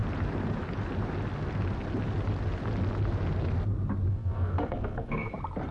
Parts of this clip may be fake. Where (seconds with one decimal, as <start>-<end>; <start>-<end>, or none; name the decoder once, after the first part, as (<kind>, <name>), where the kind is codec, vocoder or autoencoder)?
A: 4.1-5.3 (codec, SNAC)